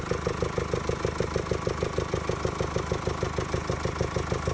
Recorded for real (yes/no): yes